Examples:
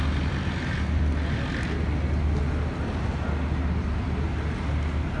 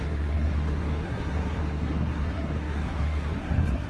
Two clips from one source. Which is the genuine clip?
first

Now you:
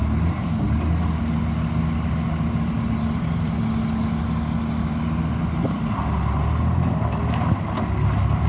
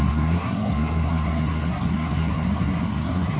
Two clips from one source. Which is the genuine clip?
first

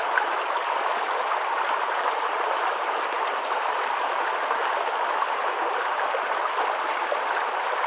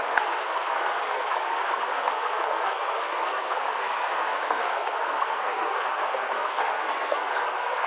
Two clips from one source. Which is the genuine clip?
first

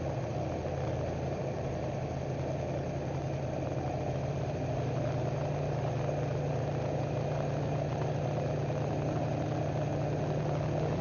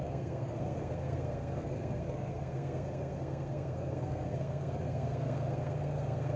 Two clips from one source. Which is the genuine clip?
first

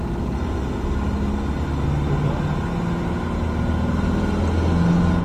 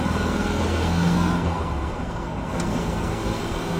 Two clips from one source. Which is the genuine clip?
first